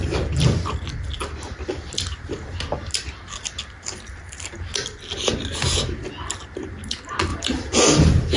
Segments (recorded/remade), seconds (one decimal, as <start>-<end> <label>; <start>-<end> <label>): 0.0-7.3 recorded; 7.3-7.8 remade; 7.8-8.4 recorded